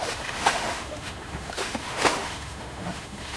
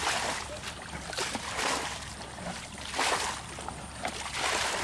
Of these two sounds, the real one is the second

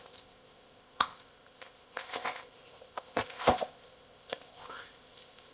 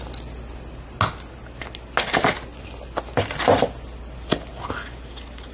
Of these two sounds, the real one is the second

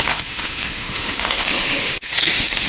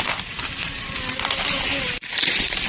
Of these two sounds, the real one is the second